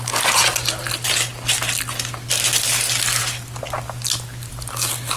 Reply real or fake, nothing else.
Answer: real